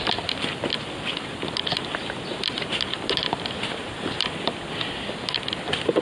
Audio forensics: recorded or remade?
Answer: remade